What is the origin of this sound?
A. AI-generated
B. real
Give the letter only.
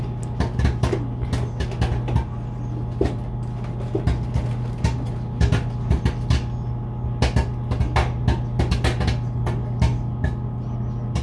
B